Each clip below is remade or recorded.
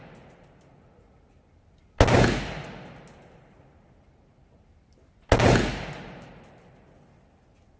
recorded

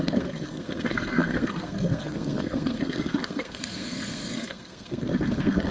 remade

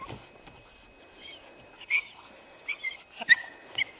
recorded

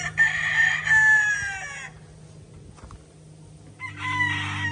recorded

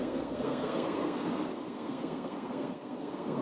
remade